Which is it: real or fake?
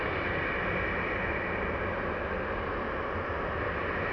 real